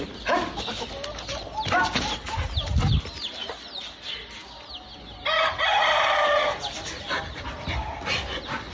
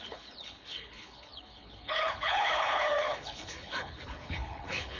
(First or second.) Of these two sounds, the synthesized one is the second